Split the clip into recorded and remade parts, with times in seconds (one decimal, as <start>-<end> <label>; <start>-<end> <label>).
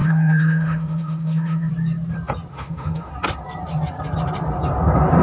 0.0-1.7 remade; 1.7-2.5 recorded; 2.5-3.1 remade; 3.1-5.2 recorded